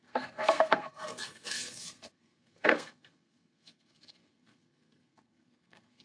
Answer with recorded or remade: remade